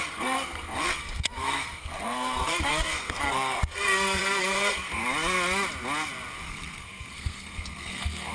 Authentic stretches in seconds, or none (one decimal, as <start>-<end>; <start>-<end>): 5.0-6.5